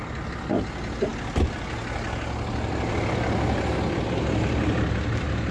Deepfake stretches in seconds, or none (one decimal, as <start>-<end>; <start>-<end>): none